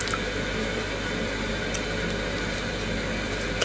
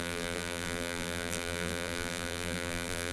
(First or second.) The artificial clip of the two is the second